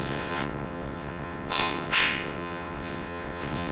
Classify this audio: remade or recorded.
remade